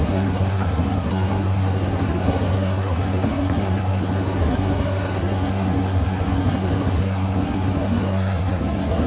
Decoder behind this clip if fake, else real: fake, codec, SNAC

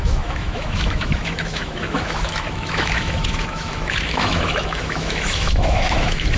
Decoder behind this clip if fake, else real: fake, autoencoder, DAC-VAE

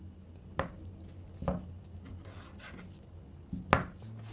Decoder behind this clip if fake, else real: real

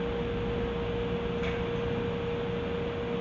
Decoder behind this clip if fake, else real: real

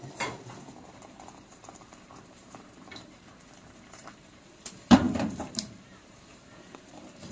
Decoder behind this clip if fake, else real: fake, vocoder, BigVGAN v2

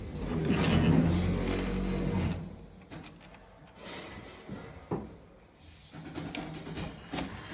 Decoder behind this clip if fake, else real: real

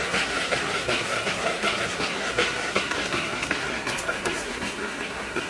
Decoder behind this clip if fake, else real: fake, codec, SNAC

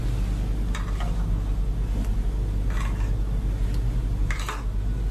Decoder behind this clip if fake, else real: real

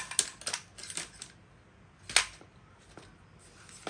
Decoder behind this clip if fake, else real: real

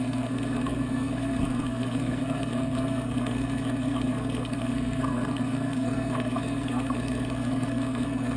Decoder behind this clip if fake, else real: fake, codec, SNAC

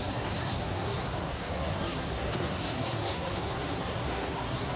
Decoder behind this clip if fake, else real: fake, codec, SNAC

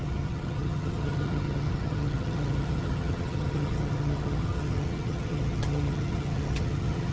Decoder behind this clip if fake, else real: fake, vocoder, HiFi-GAN